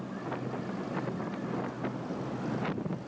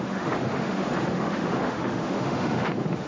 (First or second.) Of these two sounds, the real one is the first